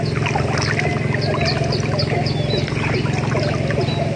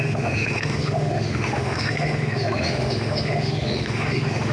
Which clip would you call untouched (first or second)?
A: first